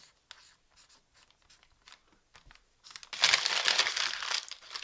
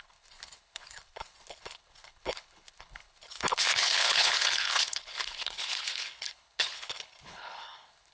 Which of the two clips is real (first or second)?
first